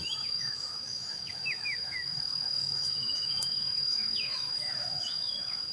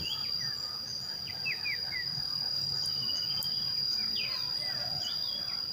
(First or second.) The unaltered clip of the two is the second